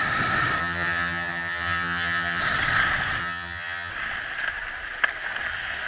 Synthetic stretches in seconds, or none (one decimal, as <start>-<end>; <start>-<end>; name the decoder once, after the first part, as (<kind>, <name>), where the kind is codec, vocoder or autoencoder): 0.6-2.4 (vocoder, HiFi-GAN); 3.2-3.9